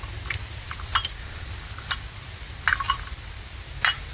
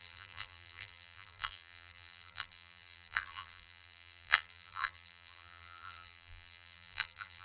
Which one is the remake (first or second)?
second